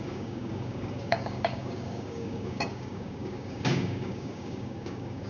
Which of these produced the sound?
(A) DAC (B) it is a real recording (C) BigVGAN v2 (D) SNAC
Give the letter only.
A